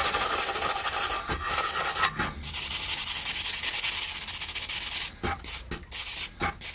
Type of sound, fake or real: real